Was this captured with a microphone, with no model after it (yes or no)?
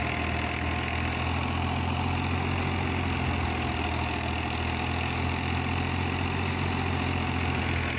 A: yes